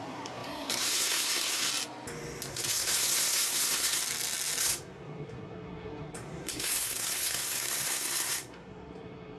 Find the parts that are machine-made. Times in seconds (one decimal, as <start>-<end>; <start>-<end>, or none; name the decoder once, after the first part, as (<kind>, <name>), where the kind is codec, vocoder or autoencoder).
0.0-1.7 (codec, SNAC); 2.5-4.0; 4.6-9.4